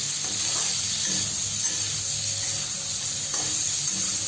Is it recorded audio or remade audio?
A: recorded